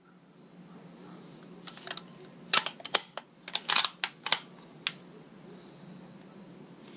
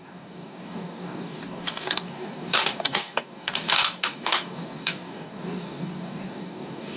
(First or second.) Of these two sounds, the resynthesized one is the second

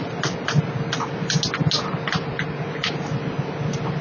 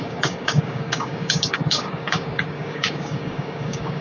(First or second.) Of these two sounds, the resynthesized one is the second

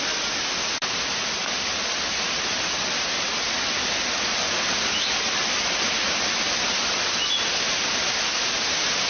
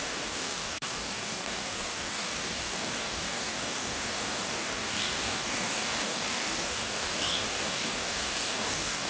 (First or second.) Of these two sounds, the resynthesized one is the second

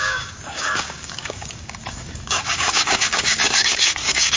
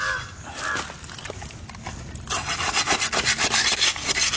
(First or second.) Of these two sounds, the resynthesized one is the first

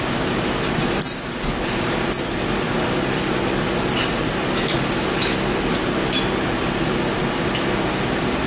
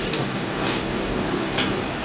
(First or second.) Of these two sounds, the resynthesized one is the second